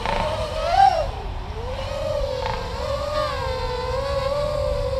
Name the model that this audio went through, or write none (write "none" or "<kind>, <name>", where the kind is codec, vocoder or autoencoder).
none